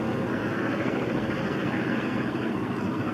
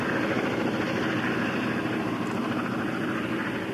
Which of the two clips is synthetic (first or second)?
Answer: first